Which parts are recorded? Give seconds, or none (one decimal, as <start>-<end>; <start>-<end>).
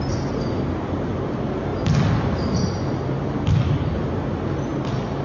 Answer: 0.0-5.2